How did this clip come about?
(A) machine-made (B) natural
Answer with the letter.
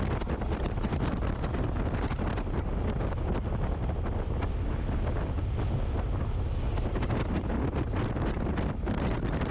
B